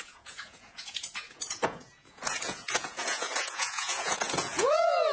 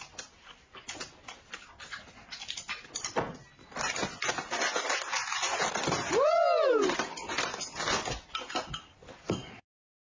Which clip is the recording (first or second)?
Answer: second